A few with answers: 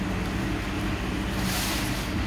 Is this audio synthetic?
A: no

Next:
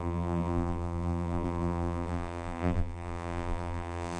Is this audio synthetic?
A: yes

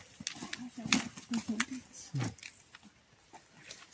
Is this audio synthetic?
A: no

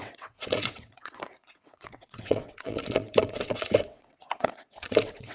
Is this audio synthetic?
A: yes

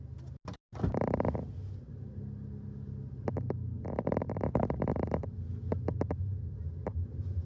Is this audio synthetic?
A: no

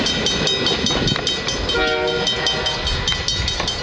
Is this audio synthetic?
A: no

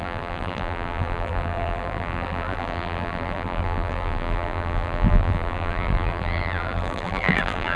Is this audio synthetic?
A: yes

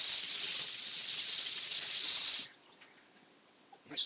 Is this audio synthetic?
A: yes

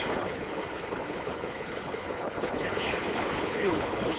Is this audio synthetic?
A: yes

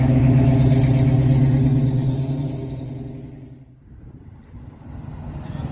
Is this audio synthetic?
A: no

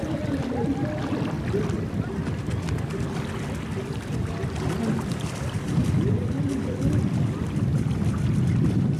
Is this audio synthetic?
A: no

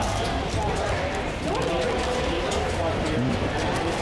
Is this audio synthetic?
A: no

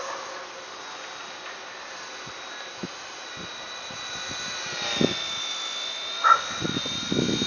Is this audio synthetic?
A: no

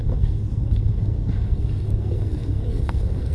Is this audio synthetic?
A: yes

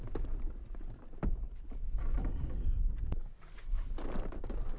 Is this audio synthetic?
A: no